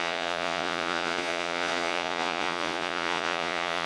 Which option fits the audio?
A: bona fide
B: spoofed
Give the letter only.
B